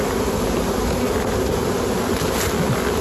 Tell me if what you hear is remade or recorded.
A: recorded